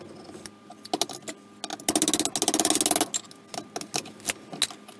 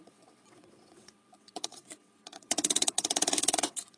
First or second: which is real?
first